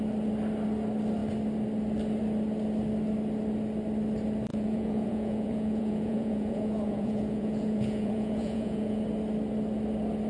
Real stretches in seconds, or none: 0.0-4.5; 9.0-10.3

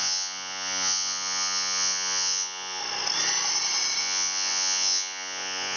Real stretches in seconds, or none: 2.8-4.0